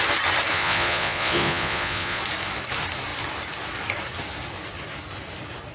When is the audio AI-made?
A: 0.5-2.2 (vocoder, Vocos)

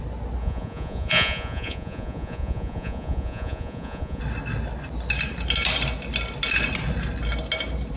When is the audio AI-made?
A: 0.4-4.2 (vocoder, Vocos)

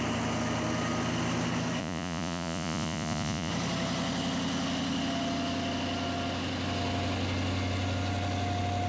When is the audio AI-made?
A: 1.8-3.5 (vocoder, Vocos)

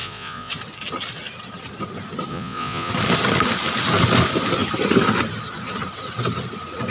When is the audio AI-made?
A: 0.0-0.5 (vocoder, Vocos); 2.3-2.9

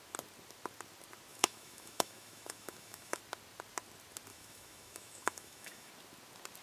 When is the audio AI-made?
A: 1.3-3.2 (autoencoder, DAC-VAE); 4.3-5.9

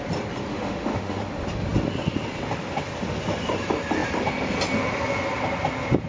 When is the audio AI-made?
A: 0.5-1.2 (autoencoder, DAC-VAE)